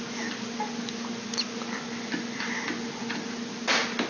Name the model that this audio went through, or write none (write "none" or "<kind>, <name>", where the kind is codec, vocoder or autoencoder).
none